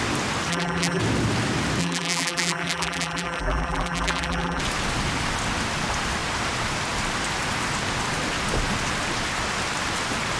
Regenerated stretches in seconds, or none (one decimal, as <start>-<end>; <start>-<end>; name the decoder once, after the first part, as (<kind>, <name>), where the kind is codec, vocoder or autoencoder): 0.5-1.0 (vocoder, BigVGAN v2); 1.8-4.6